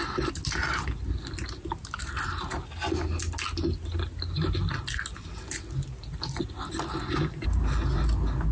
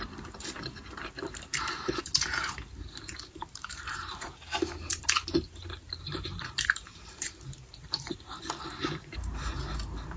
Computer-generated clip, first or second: second